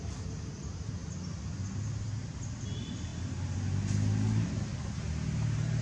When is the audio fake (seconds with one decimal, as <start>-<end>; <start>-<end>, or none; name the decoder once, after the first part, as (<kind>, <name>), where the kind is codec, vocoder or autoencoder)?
none